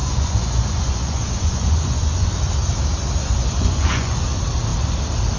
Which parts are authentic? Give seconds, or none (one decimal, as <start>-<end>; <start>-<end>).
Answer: 2.3-3.2; 4.2-5.4

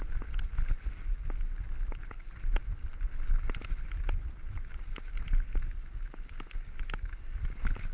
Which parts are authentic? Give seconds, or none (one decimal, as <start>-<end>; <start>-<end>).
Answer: 0.0-7.9

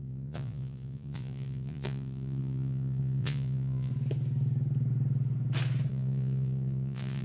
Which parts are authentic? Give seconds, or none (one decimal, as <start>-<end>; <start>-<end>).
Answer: 3.9-5.9

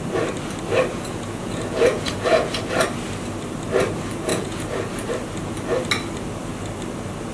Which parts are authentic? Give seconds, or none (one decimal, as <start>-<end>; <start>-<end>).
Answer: 0.0-0.9; 2.6-4.3; 4.9-7.3

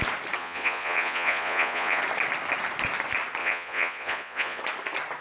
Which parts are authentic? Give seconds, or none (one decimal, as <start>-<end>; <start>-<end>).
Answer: 0.0-0.4; 2.0-3.4; 4.6-5.2

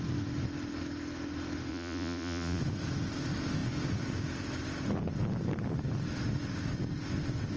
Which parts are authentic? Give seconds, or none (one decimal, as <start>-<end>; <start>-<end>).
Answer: 0.0-1.7; 2.6-7.6